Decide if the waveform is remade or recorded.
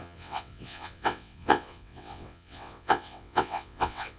remade